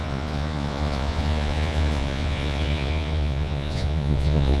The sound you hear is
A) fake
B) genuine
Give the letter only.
A